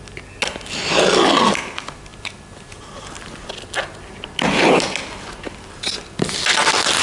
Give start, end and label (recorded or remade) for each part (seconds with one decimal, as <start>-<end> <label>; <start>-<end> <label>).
0.0-7.0 recorded